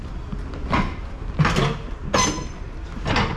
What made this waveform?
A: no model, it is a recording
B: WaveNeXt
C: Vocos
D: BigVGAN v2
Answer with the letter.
A